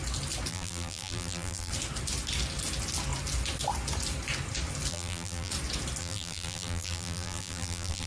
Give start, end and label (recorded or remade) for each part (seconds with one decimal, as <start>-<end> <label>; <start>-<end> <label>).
0.0-0.5 recorded; 0.5-1.7 remade; 1.7-4.9 recorded; 4.9-5.5 remade; 5.5-6.0 recorded; 6.0-8.1 remade